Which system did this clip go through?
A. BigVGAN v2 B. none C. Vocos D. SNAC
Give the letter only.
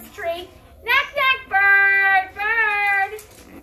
B